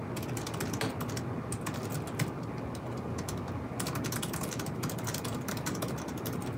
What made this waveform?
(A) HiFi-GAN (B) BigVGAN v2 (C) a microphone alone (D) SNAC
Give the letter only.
C